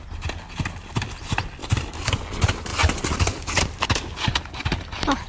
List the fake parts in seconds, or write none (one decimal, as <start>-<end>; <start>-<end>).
1.6-2.1; 2.7-3.6